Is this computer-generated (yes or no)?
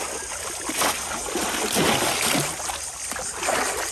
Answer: no